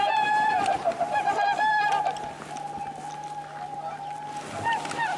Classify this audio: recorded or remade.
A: recorded